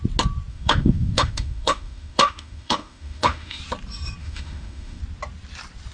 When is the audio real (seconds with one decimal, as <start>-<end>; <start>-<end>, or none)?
0.0-0.5; 3.6-4.2; 5.0-5.9